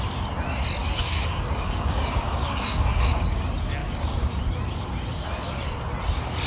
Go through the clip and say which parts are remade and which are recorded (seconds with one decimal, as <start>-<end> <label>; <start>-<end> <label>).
0.0-0.8 recorded; 0.8-3.4 remade; 3.4-3.8 recorded; 3.8-4.4 remade; 4.4-6.5 recorded